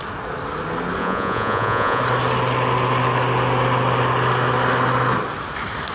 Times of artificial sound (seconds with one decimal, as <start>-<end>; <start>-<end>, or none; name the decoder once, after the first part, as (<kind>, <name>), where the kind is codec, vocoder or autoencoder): 1.0-2.0 (vocoder, Vocos)